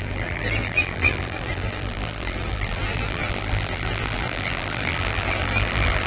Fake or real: fake